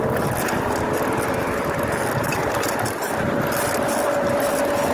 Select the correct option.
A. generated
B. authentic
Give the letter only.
B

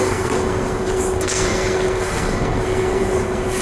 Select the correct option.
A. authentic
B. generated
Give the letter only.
B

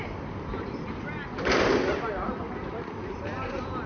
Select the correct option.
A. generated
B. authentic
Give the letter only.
B